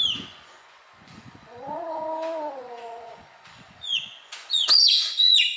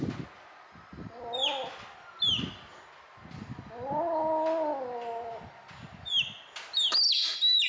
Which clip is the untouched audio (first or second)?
second